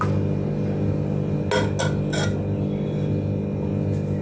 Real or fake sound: real